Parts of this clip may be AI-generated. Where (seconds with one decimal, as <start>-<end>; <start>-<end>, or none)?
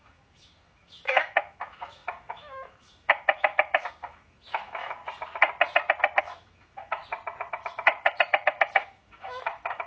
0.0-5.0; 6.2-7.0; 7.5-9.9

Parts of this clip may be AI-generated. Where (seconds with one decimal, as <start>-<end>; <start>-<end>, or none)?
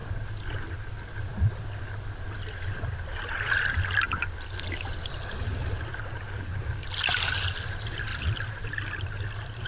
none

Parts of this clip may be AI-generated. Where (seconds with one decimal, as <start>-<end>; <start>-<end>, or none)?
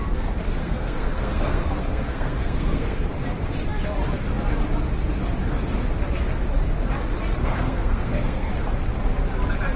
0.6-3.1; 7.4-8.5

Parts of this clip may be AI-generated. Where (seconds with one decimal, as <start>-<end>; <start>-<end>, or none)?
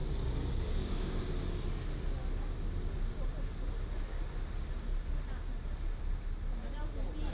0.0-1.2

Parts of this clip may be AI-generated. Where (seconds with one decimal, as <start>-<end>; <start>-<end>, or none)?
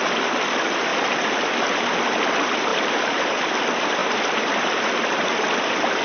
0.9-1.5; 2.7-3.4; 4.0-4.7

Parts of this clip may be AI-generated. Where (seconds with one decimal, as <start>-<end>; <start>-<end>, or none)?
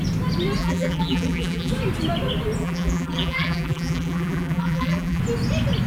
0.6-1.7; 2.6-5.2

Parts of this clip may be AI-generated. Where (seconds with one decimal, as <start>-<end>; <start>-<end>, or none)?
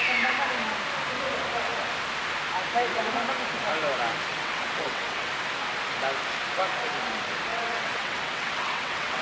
4.3-5.3; 7.5-9.2